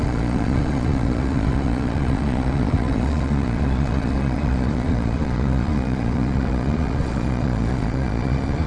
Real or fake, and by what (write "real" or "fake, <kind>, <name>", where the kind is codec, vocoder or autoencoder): fake, vocoder, Vocos